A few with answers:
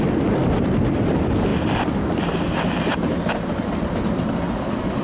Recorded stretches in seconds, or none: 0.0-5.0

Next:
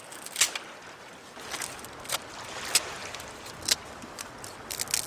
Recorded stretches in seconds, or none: 0.0-3.0; 4.3-5.1